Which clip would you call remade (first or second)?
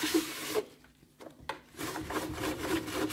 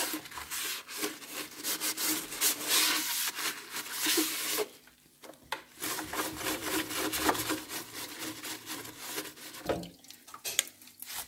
first